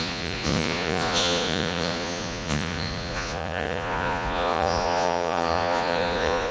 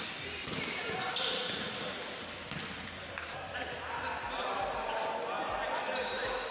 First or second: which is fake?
first